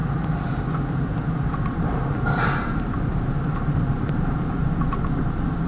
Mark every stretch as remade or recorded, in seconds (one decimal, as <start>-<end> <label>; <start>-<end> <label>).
0.0-0.9 recorded; 0.9-4.6 remade; 4.6-5.7 recorded